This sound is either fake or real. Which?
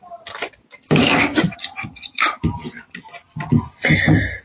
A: real